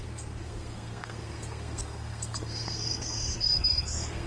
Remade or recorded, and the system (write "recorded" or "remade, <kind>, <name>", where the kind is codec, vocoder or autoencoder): remade, codec, SNAC